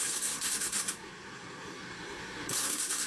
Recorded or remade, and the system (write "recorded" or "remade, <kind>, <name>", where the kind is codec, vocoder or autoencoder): remade, codec, SNAC